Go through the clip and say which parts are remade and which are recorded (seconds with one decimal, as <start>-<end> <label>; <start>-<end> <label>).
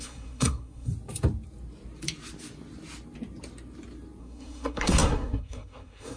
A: 0.0-0.9 remade; 0.9-4.2 recorded; 4.2-6.2 remade